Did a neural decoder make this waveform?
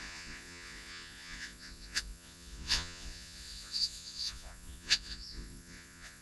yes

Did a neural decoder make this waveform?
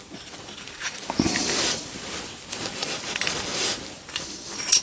no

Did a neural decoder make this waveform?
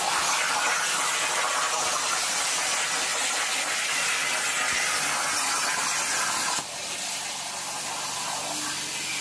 no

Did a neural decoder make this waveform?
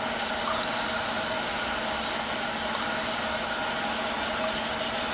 no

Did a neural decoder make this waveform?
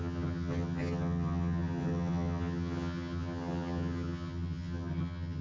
yes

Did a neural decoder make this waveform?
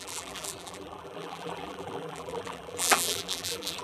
yes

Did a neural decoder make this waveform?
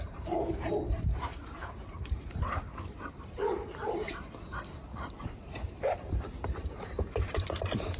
yes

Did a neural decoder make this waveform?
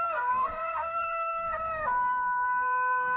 yes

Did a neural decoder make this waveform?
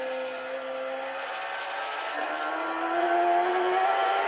no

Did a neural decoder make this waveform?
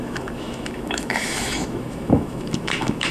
yes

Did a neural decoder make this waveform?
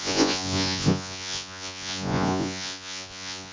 yes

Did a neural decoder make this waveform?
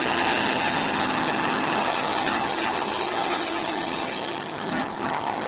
yes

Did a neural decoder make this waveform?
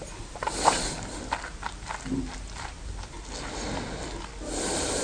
no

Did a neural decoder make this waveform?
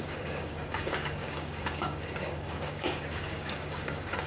yes